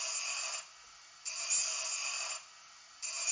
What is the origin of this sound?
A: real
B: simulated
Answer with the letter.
A